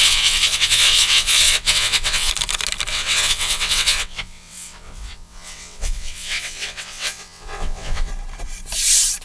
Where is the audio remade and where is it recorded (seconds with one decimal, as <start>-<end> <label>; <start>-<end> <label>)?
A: 0.0-2.3 remade; 2.3-2.9 recorded; 2.9-8.1 remade; 8.1-9.2 recorded